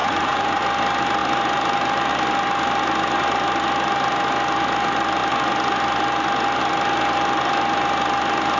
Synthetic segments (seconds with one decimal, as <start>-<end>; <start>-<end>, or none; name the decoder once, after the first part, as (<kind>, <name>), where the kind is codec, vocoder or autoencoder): 0.0-0.6 (vocoder, Vocos)